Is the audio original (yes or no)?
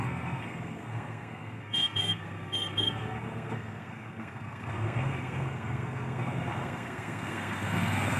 no